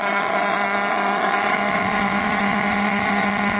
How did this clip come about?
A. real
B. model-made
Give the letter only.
B